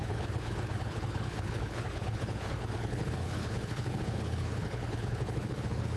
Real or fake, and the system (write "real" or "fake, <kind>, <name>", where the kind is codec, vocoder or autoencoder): fake, codec, HILCodec